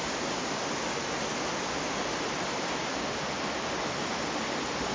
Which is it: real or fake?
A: real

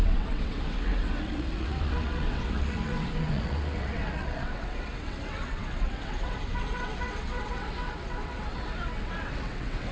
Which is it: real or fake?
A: fake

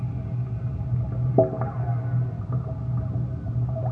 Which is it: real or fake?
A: real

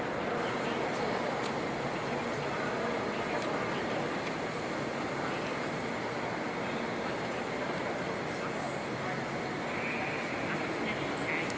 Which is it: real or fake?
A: real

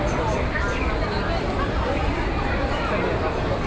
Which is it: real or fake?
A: real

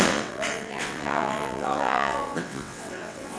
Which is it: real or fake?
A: fake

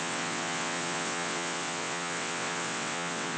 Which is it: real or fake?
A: fake